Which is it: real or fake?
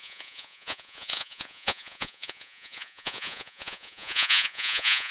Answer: fake